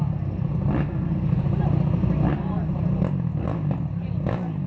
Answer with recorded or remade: recorded